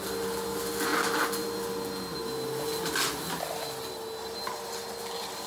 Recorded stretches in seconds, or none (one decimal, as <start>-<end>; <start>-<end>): 0.0-5.5